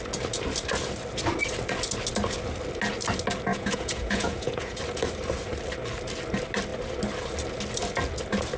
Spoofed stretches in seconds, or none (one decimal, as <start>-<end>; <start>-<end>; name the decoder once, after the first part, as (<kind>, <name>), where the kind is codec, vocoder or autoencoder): 3.5-4.8 (vocoder, Vocos)